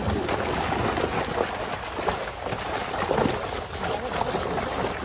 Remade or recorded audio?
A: recorded